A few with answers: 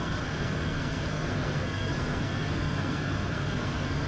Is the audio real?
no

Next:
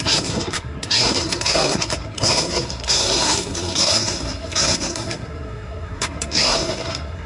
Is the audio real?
no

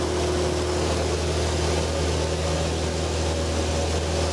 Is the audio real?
yes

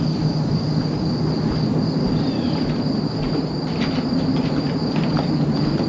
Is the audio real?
yes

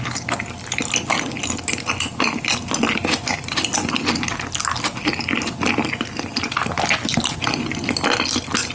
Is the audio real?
yes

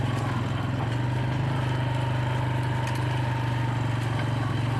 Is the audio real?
yes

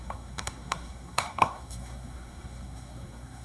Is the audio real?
no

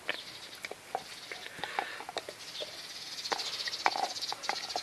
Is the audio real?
yes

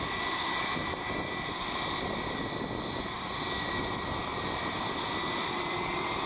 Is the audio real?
yes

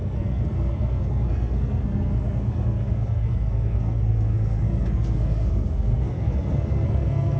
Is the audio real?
no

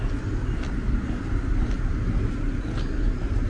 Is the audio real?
yes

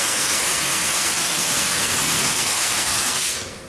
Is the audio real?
no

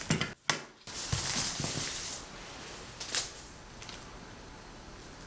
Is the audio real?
yes